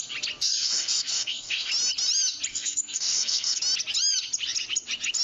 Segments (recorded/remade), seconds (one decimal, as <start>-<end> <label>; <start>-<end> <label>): 0.0-0.4 recorded; 0.4-1.7 remade; 1.7-2.5 recorded; 2.5-3.6 remade; 3.6-5.2 recorded